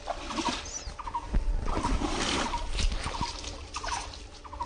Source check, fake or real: real